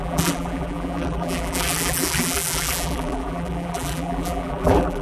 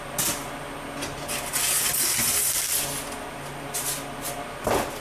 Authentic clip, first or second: second